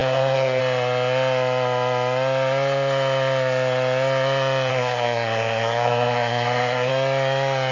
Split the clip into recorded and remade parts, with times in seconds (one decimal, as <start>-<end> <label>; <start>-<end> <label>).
0.0-0.6 remade; 0.6-4.7 recorded; 4.7-6.9 remade; 6.9-7.7 recorded